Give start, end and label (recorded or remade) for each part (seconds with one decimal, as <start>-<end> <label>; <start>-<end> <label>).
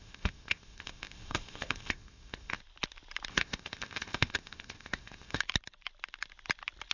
0.0-2.6 remade; 2.6-3.3 recorded; 3.3-5.4 remade; 5.4-6.9 recorded